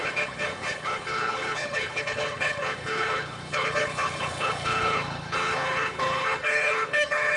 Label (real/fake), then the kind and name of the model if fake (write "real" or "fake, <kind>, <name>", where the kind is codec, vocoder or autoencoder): fake, codec, HILCodec